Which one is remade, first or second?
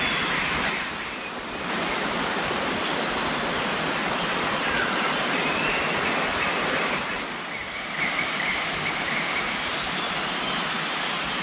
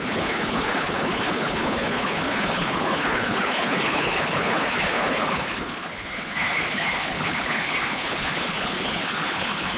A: second